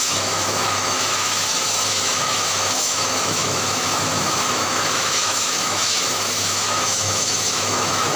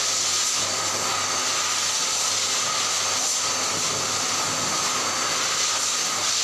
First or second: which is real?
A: second